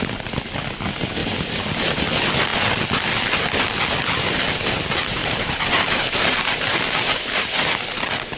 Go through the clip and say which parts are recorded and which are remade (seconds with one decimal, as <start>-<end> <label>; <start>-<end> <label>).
0.0-1.2 recorded; 1.2-2.0 remade; 2.0-5.2 recorded; 5.2-7.8 remade; 7.8-8.4 recorded